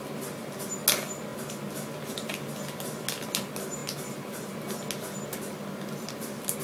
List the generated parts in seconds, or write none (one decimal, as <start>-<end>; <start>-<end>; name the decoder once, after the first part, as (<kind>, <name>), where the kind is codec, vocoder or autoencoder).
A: none